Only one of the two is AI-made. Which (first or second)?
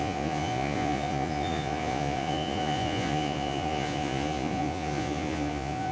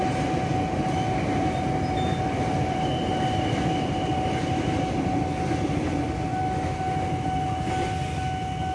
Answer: first